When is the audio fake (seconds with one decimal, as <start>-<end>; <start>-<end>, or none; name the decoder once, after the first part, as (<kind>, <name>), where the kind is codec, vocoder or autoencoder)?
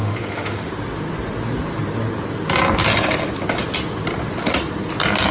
0.0-0.7 (autoencoder, DAC-VAE)